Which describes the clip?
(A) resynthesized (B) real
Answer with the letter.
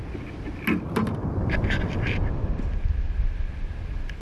B